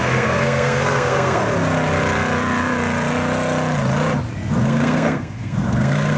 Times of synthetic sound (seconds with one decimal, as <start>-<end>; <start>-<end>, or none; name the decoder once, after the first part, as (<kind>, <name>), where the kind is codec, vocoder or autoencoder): 0.0-1.4 (codec, SNAC); 4.6-6.2